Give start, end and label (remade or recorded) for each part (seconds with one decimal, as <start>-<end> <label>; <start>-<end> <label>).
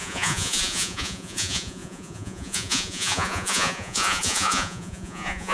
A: 0.0-5.5 remade